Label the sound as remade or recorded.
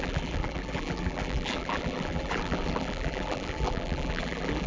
remade